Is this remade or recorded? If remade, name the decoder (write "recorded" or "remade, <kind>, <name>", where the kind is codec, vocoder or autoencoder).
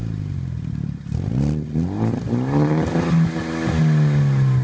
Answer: recorded